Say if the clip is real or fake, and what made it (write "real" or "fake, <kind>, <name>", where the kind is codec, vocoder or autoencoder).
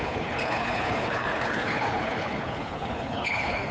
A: fake, codec, HILCodec